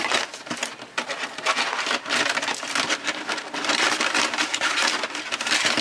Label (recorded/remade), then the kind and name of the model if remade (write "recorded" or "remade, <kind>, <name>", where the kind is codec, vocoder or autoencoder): recorded